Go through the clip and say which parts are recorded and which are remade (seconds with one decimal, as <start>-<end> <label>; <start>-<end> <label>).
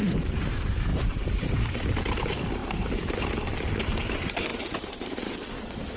0.0-6.0 remade